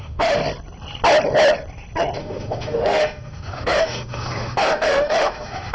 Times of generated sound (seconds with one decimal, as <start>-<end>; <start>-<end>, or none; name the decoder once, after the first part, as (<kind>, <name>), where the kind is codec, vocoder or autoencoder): 0.0-0.4 (autoencoder, DAC-VAE); 2.2-5.7